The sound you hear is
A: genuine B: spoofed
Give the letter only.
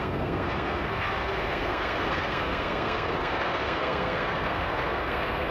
B